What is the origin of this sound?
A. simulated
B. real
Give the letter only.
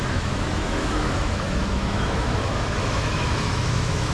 A